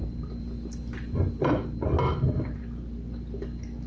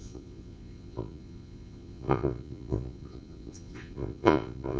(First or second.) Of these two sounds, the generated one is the second